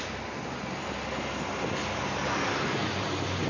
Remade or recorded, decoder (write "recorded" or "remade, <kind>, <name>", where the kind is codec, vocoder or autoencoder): recorded